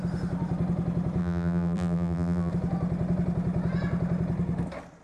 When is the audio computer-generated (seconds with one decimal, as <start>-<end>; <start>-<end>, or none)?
1.2-2.5